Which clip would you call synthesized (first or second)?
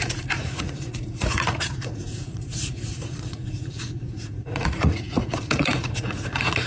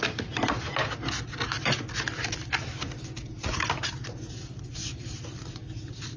first